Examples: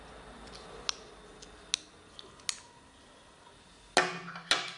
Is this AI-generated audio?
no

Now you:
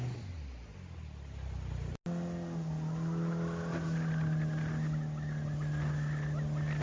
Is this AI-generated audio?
no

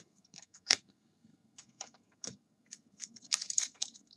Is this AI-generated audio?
yes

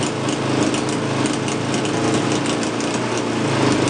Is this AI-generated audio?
no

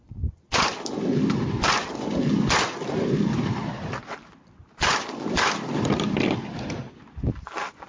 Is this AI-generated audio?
no